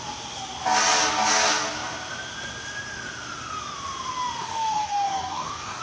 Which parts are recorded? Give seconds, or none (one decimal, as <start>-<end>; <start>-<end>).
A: 0.0-4.4